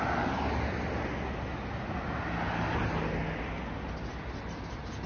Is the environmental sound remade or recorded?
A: recorded